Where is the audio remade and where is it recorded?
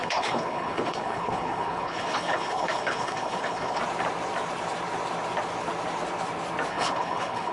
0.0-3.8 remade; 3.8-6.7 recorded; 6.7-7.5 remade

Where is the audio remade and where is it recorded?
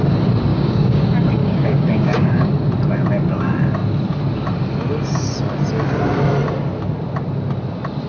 0.0-0.5 recorded; 0.5-1.0 remade; 1.0-1.4 recorded; 1.4-2.5 remade; 2.5-8.1 recorded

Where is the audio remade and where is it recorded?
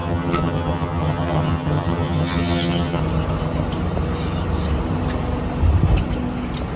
0.0-3.0 remade; 3.0-6.8 recorded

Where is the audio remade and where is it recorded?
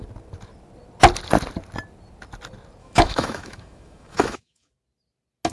0.0-2.8 recorded; 2.8-4.7 remade; 4.7-5.5 recorded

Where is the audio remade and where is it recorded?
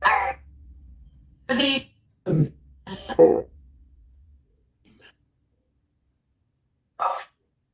0.0-0.6 recorded; 0.6-1.6 remade; 1.6-2.6 recorded; 2.6-5.1 remade; 5.1-7.7 recorded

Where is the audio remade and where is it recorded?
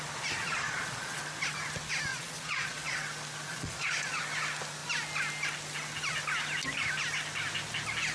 0.0-0.4 recorded; 0.4-1.2 remade; 1.2-2.1 recorded; 2.1-3.0 remade; 3.0-3.5 recorded; 3.5-4.2 remade; 4.2-8.1 recorded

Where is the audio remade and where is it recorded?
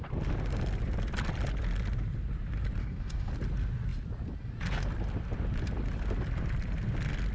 0.0-2.8 recorded; 2.8-3.3 remade; 3.3-7.3 recorded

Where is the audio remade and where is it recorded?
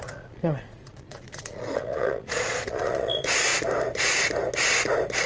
0.0-3.5 remade; 3.5-5.3 recorded